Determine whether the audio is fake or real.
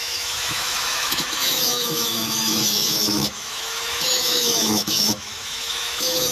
fake